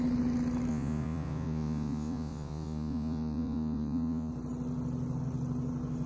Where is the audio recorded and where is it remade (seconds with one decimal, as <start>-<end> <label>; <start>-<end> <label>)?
0.0-0.7 recorded; 0.7-4.3 remade; 4.3-6.1 recorded